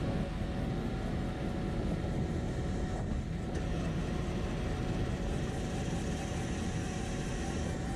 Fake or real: real